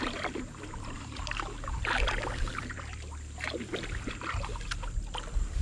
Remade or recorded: remade